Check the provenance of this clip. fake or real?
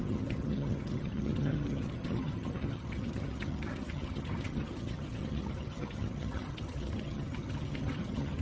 fake